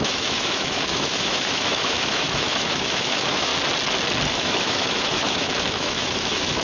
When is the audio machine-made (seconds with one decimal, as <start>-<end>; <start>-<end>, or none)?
0.0-3.5; 4.3-6.6